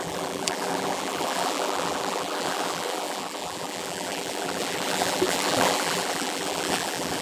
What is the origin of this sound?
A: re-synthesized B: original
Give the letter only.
A